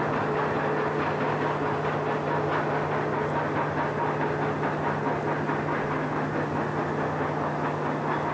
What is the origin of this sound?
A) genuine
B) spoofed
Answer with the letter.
A